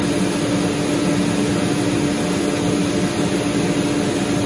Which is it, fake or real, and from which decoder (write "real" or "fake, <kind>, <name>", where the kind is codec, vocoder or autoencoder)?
real